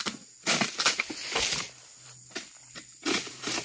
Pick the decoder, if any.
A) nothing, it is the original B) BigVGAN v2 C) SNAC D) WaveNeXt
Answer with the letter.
A